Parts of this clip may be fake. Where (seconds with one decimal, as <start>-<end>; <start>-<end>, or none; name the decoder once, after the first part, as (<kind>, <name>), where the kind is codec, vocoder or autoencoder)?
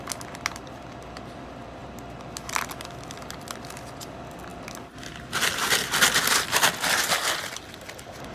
none